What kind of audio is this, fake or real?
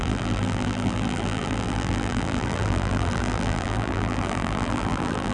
fake